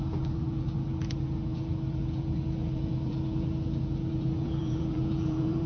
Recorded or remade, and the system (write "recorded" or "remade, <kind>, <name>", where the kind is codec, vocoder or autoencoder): remade, vocoder, BigVGAN v2